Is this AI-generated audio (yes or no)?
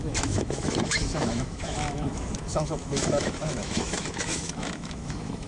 yes